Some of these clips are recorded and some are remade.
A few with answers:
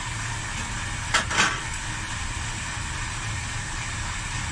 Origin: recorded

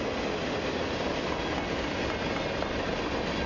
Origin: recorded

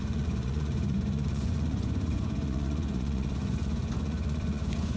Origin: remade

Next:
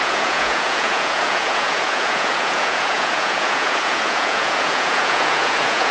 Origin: remade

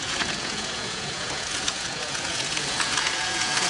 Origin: remade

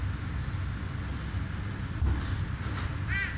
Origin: recorded